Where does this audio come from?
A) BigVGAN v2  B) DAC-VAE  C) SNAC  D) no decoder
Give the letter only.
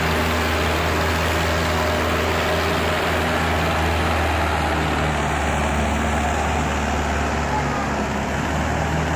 D